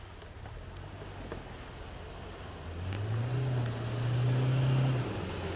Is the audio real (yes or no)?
yes